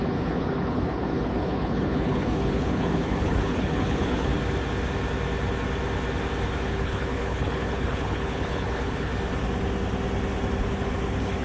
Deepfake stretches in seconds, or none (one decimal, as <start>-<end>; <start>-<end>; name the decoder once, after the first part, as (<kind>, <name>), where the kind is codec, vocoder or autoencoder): 0.0-4.3 (codec, HILCodec); 6.7-9.1; 10.6-11.4